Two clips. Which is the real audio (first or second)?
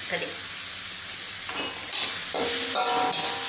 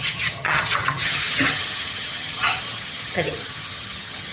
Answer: first